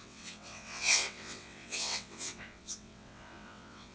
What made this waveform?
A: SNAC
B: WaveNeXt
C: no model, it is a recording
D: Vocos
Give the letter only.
B